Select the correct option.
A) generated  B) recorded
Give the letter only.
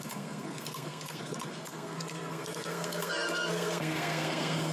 A